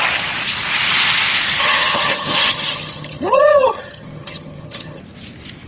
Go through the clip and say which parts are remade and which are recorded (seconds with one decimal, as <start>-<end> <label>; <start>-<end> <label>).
0.0-1.6 recorded; 1.6-5.0 remade; 5.0-5.7 recorded